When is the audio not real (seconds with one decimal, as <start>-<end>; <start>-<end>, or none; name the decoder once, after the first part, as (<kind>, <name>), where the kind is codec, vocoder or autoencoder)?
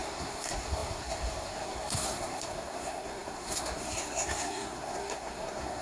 0.0-5.8 (codec, SNAC)